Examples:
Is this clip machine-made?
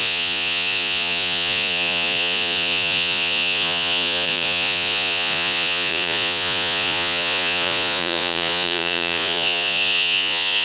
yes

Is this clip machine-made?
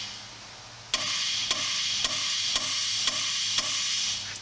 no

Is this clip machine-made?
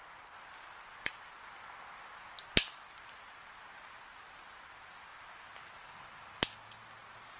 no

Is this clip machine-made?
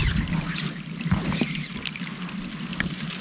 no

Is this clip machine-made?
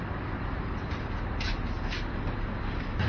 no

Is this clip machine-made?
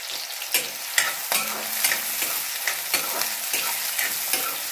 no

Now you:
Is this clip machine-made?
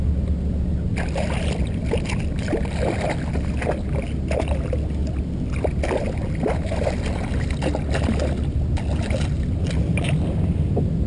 no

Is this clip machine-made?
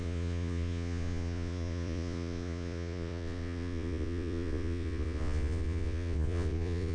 yes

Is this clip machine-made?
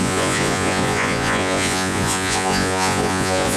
yes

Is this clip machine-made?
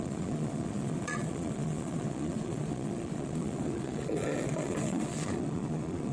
yes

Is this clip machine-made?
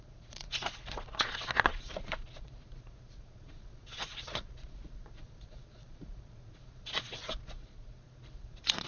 yes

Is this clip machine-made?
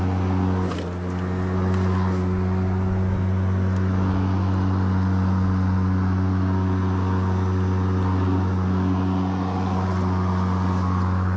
no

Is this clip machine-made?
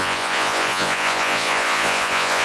yes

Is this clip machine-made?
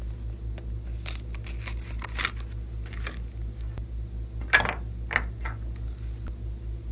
no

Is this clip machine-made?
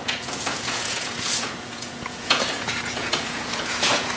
yes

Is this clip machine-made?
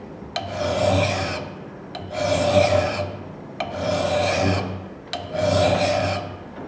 no